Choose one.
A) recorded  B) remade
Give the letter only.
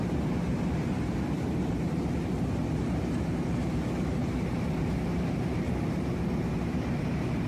B